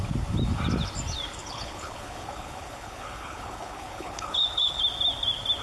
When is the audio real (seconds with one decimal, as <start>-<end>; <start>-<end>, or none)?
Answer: 0.0-1.4; 4.8-5.6